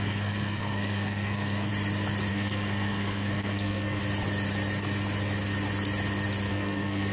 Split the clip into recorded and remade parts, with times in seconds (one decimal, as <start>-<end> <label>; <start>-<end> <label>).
0.0-1.7 remade; 1.7-2.3 recorded; 2.3-4.0 remade; 4.0-6.5 recorded; 6.5-7.1 remade